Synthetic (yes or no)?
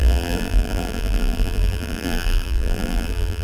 yes